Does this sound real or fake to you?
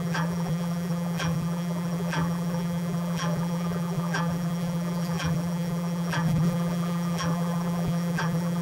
fake